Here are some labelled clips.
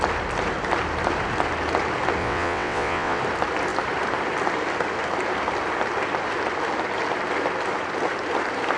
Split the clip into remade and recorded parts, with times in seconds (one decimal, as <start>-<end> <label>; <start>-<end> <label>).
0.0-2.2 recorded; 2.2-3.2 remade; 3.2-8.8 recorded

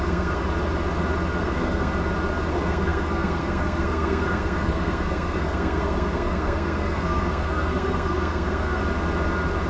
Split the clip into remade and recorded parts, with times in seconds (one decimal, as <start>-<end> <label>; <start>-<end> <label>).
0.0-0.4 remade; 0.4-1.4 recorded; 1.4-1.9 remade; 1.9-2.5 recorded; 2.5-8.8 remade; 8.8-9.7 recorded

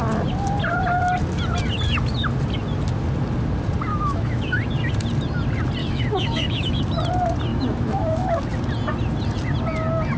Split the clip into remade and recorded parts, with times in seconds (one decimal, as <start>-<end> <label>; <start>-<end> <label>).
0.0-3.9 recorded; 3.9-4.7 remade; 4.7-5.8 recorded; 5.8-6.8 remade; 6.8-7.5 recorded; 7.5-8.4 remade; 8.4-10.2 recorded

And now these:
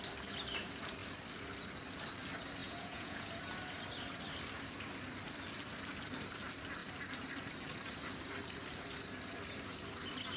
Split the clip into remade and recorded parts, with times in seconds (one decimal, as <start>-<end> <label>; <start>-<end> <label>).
0.0-2.6 recorded; 2.6-3.3 remade; 3.3-10.4 recorded

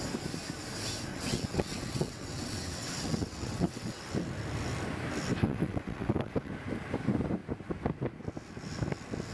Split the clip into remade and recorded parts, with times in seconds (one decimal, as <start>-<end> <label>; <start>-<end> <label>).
0.0-1.1 recorded; 1.1-4.0 remade; 4.0-5.4 recorded; 5.4-6.5 remade; 6.5-9.3 recorded

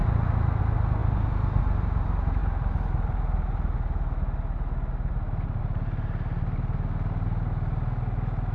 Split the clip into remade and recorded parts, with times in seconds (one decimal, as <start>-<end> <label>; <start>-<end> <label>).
0.0-8.5 recorded